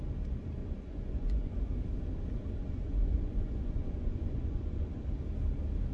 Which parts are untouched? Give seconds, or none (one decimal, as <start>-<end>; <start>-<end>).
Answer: 0.0-0.6; 1.7-2.6; 5.1-5.9